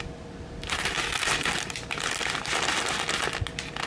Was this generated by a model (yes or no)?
no